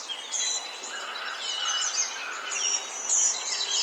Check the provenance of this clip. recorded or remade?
recorded